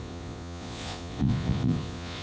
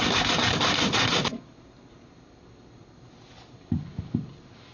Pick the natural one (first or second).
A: second